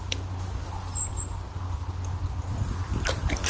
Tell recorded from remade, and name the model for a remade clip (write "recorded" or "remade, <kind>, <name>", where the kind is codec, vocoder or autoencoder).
recorded